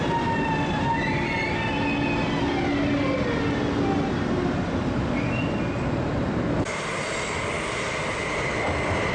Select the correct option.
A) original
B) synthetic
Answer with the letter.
A